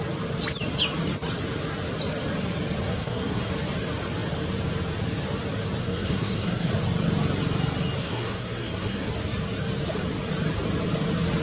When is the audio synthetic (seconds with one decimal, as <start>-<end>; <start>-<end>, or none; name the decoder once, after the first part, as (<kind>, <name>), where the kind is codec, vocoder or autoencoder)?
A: 2.9-3.5 (codec, SNAC); 5.8-6.7; 8.0-9.1